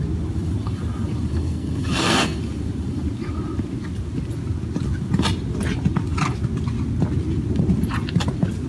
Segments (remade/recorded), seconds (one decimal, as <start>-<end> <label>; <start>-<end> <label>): 0.0-1.3 recorded; 1.3-2.4 remade; 2.4-8.7 recorded